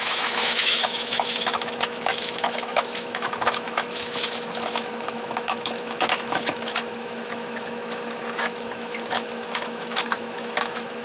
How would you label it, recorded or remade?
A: remade